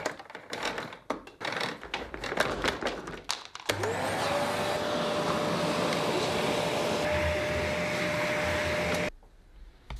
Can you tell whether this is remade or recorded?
recorded